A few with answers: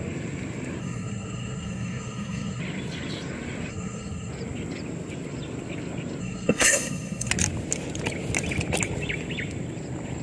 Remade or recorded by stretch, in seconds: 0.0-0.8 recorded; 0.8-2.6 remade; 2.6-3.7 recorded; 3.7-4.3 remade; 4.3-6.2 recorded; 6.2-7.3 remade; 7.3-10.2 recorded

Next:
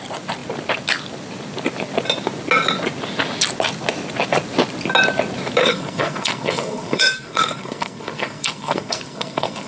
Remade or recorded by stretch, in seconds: 0.0-5.6 recorded; 5.6-9.7 remade

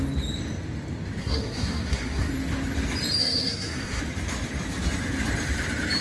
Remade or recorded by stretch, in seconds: 0.0-1.2 recorded; 1.2-2.3 remade; 2.3-3.2 recorded; 3.2-4.0 remade; 4.0-6.0 recorded

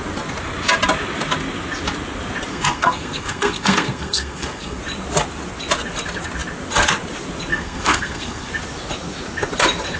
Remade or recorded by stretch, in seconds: 0.0-2.5 recorded; 2.5-4.8 remade; 4.8-7.5 recorded; 7.5-8.5 remade; 8.5-10.0 recorded

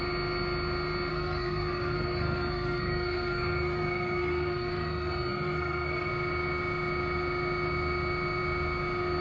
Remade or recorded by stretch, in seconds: 0.0-1.1 recorded; 1.1-6.1 remade; 6.1-9.2 recorded

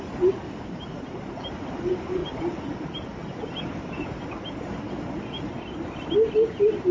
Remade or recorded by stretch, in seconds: 0.0-6.9 recorded

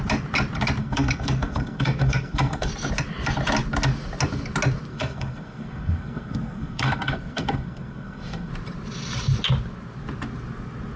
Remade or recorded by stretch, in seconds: 0.0-0.8 recorded; 0.8-2.7 remade; 2.7-4.9 recorded; 4.9-8.5 remade; 8.5-11.0 recorded